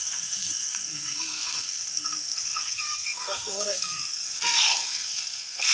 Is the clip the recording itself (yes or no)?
no